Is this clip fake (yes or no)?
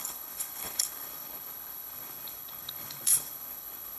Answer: yes